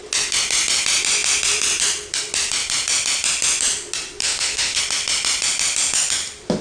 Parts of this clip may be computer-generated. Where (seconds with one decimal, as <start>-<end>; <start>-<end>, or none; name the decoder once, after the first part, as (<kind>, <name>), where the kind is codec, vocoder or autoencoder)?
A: 4.2-4.8 (autoencoder, DAC-VAE)